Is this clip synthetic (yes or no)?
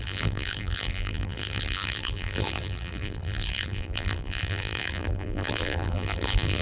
yes